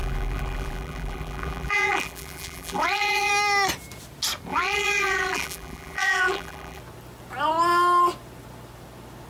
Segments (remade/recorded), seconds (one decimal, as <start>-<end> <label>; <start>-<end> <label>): 0.0-3.3 remade; 3.3-4.5 recorded; 4.5-6.8 remade; 6.8-9.3 recorded